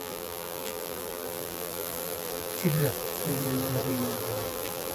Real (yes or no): no